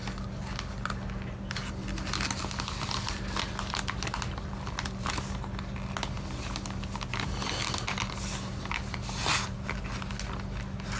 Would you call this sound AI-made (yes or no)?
no